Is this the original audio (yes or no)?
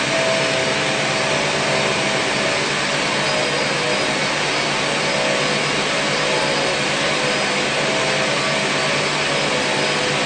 yes